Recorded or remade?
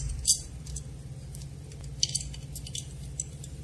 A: recorded